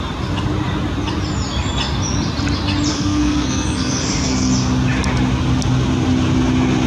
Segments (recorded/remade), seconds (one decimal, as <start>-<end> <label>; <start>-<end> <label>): 0.0-2.9 recorded; 2.9-4.5 remade; 4.5-6.9 recorded